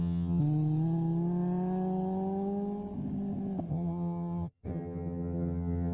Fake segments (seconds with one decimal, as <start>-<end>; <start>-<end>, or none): 0.0-0.4; 3.7-5.9